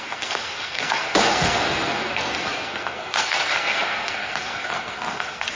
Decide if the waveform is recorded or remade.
remade